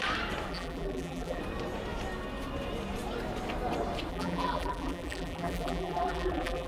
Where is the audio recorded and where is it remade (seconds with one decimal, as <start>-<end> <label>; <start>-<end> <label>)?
0.0-0.5 recorded; 0.5-1.4 remade; 1.4-4.1 recorded; 4.1-6.7 remade